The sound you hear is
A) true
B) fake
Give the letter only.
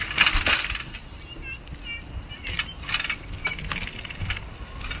A